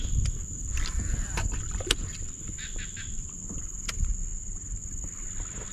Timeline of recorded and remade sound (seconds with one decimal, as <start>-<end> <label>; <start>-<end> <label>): 0.0-0.4 recorded; 0.4-2.2 remade; 2.2-5.7 recorded